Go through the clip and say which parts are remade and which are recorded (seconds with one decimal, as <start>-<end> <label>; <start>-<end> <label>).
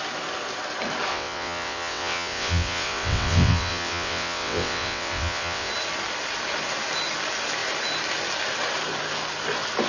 0.0-1.1 recorded; 1.1-5.7 remade; 5.7-9.9 recorded